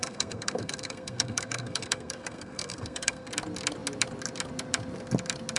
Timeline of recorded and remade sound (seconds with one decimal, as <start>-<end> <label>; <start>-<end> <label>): 0.0-3.3 remade; 3.3-5.6 recorded